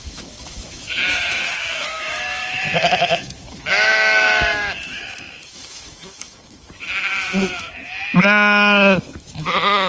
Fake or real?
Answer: fake